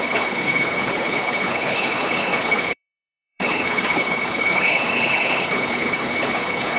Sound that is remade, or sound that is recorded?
remade